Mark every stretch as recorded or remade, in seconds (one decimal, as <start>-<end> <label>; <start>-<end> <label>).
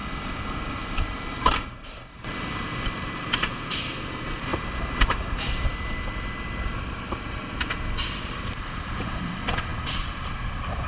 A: 0.0-0.7 recorded; 0.7-4.5 remade; 4.5-8.4 recorded; 8.4-10.9 remade